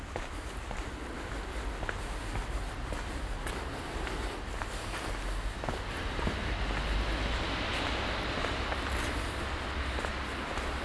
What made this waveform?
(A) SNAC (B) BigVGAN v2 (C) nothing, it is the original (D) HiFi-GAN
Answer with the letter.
C